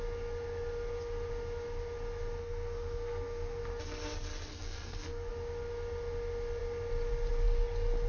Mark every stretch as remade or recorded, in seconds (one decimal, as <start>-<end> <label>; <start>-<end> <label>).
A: 0.0-2.4 recorded; 2.4-3.6 remade; 3.6-4.5 recorded; 4.5-5.3 remade; 5.3-8.1 recorded

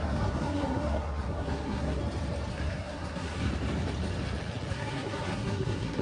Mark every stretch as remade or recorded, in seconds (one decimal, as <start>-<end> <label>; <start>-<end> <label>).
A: 0.0-2.0 remade; 2.0-2.5 recorded; 2.5-3.5 remade; 3.5-4.7 recorded; 4.7-6.0 remade

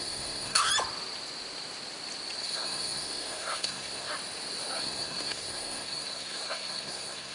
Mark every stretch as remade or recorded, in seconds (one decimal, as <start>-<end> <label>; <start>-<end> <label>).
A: 0.0-0.7 remade; 0.7-2.4 recorded; 2.4-4.1 remade; 4.1-4.8 recorded; 4.8-7.3 remade

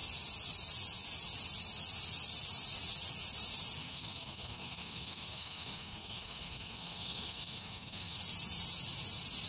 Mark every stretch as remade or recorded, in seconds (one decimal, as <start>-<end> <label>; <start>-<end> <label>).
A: 0.0-3.8 recorded; 3.8-8.2 remade; 8.2-9.5 recorded

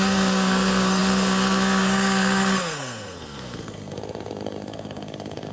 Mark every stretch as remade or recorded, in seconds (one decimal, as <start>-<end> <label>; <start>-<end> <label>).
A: 0.0-5.5 remade

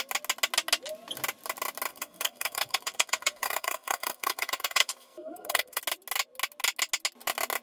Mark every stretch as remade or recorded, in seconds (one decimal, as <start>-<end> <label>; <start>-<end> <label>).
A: 0.0-1.9 recorded; 1.9-5.8 remade; 5.8-7.6 recorded